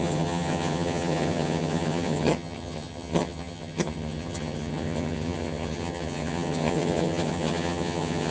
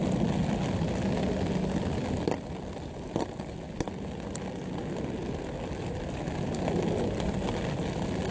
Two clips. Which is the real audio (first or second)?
second